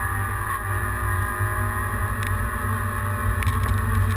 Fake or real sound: real